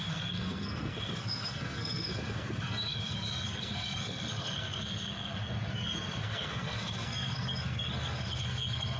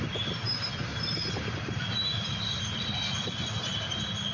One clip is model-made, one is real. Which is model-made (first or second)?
first